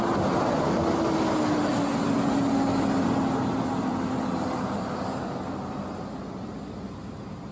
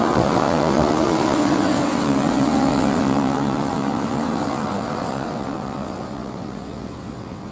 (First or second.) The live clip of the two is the first